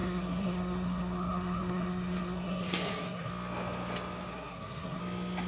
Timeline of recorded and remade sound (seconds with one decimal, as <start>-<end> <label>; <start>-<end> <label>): 0.0-3.3 remade; 3.3-4.3 recorded; 4.3-5.0 remade; 5.0-5.5 recorded